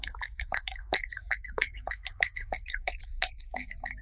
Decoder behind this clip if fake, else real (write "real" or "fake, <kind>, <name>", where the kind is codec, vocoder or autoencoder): fake, autoencoder, DAC-VAE